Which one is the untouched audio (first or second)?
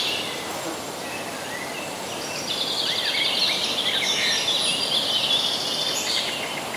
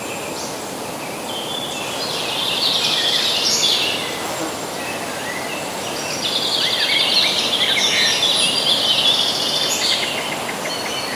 second